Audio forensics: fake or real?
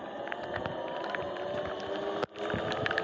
real